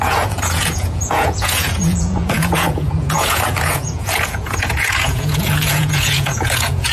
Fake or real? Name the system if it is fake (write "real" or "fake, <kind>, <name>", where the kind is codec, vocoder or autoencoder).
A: fake, vocoder, Vocos